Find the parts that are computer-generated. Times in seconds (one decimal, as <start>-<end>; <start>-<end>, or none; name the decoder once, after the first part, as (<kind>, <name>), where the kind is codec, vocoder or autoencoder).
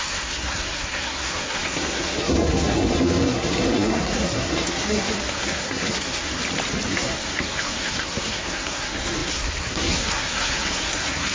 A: 0.0-6.4 (codec, SNAC); 6.9-11.3